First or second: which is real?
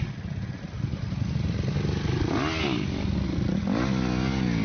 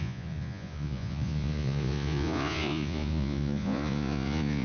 first